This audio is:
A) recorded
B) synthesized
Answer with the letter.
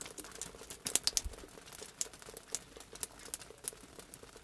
A